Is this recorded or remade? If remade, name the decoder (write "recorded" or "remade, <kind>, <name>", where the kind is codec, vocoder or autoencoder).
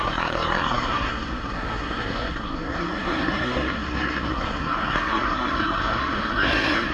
remade, codec, SNAC